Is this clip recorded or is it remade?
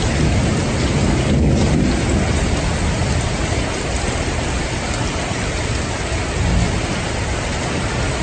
recorded